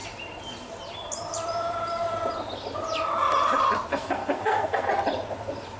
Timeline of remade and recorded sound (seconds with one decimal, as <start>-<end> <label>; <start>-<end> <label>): 0.0-3.9 recorded; 3.9-4.9 remade; 4.9-5.8 recorded